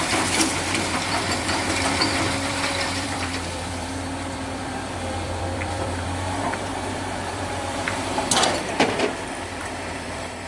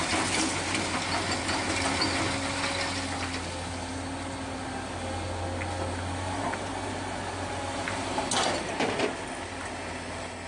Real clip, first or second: second